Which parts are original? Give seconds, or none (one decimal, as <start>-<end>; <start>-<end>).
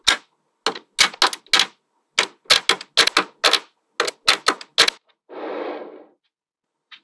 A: 0.0-7.0